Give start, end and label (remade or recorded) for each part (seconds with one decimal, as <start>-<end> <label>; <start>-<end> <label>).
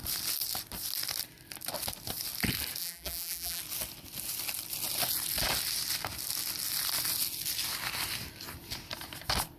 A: 0.0-2.8 recorded; 2.8-3.6 remade; 3.6-9.6 recorded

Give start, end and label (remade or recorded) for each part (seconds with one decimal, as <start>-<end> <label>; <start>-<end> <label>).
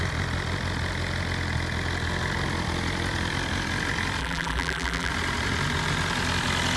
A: 0.0-4.2 recorded; 4.2-5.1 remade; 5.1-6.8 recorded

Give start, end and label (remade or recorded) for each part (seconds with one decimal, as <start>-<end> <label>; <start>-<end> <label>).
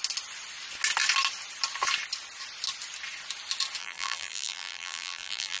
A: 0.0-3.8 recorded; 3.8-5.6 remade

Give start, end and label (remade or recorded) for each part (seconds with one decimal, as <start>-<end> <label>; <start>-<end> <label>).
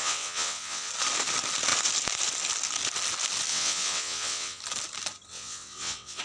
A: 0.0-0.9 remade; 0.9-3.5 recorded; 3.5-4.6 remade; 4.6-5.3 recorded; 5.3-6.2 remade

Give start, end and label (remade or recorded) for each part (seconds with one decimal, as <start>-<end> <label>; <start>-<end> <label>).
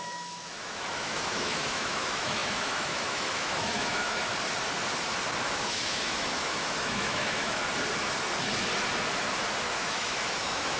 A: 0.0-4.3 remade; 4.3-5.4 recorded; 5.4-7.6 remade; 7.6-9.6 recorded; 9.6-10.8 remade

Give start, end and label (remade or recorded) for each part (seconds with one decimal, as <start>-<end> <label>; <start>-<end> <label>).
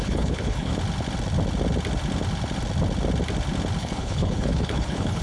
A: 0.0-0.7 remade; 0.7-3.8 recorded; 3.8-5.2 remade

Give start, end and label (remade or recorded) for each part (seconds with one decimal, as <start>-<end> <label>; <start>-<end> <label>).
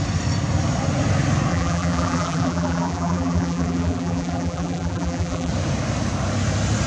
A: 0.0-1.5 recorded; 1.5-5.5 remade; 5.5-6.9 recorded